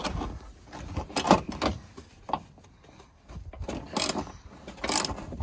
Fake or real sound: real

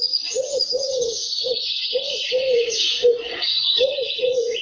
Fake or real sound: fake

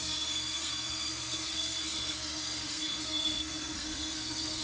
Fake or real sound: fake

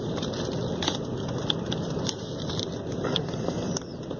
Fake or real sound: real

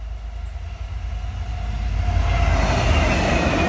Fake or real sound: real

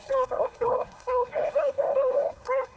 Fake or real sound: fake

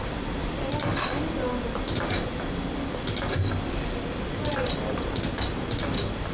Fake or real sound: real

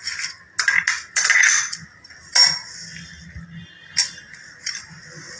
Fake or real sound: real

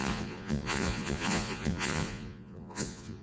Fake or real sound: fake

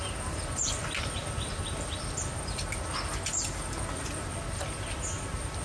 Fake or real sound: real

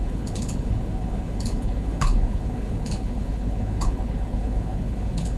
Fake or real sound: fake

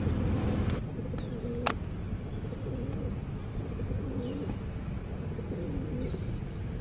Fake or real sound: real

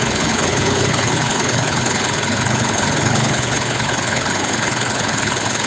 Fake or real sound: fake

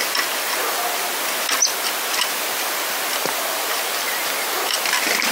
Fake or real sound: real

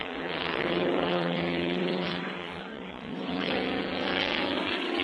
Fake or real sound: fake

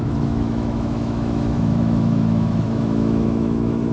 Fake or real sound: fake